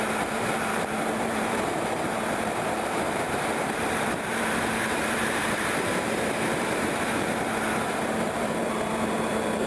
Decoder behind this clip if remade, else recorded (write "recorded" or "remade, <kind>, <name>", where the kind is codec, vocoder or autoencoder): remade, vocoder, BigVGAN v2